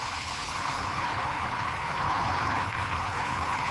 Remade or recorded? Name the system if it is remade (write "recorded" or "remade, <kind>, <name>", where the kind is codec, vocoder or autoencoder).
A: remade, codec, HILCodec